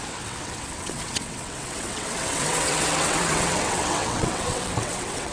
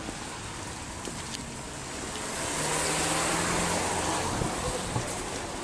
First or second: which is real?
second